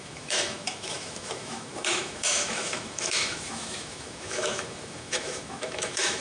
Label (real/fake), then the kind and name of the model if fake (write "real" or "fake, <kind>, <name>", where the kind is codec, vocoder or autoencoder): fake, autoencoder, DAC-VAE